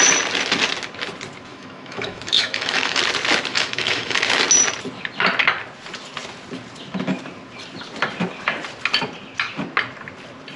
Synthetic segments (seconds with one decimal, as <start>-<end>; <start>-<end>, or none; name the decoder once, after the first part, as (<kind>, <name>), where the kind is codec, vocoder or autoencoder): 1.5-3.0 (autoencoder, DAC-VAE); 3.5-4.2